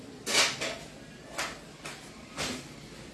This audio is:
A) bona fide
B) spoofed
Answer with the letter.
A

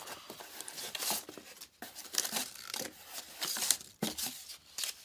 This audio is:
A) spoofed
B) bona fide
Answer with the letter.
B